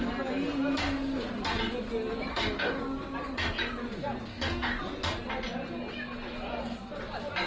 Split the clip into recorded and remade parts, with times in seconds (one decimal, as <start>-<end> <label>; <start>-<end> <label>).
0.0-2.3 recorded; 2.3-2.8 remade; 2.8-4.3 recorded; 4.3-4.8 remade; 4.8-7.5 recorded